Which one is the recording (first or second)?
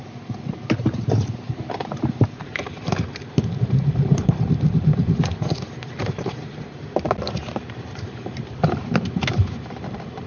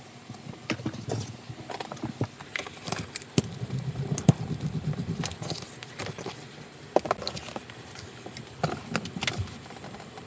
second